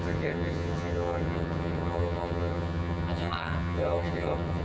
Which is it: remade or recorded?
remade